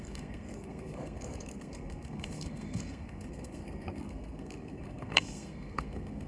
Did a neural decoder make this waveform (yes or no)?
yes